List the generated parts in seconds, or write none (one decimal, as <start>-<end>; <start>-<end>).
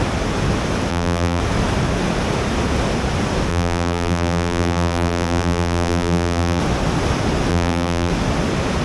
0.9-1.4; 3.5-6.6; 7.5-8.1